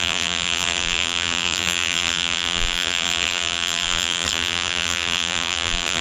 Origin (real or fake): fake